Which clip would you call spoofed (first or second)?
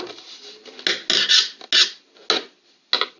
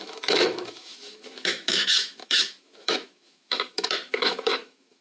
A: second